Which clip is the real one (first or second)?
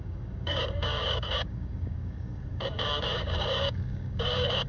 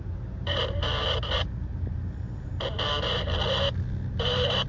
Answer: second